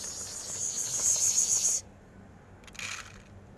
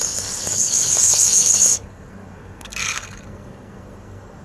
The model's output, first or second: second